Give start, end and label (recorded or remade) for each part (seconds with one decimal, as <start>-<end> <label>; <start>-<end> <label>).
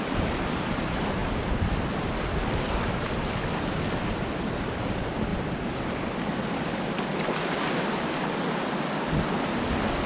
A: 0.0-1.2 recorded; 1.2-4.4 remade; 4.4-5.3 recorded; 5.3-6.9 remade; 6.9-10.1 recorded